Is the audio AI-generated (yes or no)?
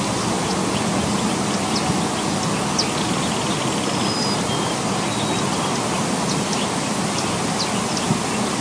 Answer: no